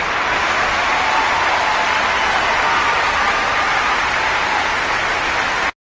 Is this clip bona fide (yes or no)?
yes